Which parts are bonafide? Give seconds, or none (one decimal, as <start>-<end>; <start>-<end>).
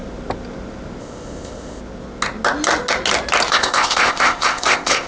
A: 0.0-1.0; 1.8-3.5